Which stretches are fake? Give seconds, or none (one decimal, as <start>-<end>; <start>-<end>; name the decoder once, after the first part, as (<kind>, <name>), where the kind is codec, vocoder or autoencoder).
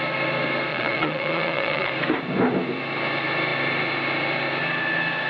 0.7-1.9 (vocoder, Vocos)